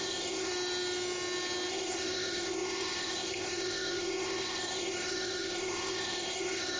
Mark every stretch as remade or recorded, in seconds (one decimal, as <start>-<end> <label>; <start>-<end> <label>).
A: 0.0-0.5 remade; 0.5-1.7 recorded; 1.7-6.8 remade